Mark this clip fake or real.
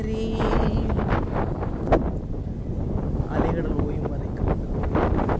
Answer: real